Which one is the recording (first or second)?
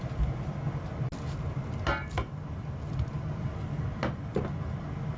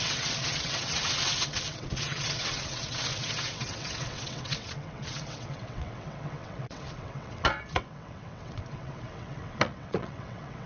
first